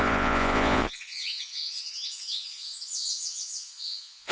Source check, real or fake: fake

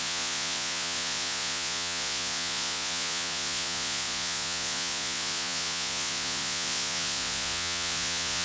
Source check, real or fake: fake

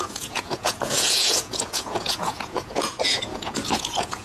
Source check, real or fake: fake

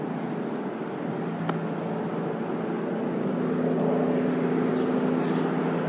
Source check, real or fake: real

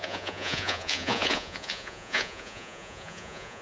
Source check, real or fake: fake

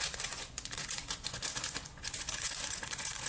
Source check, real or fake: fake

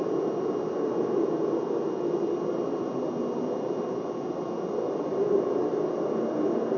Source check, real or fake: real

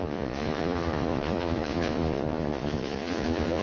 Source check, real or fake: fake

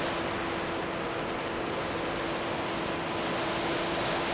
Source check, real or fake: real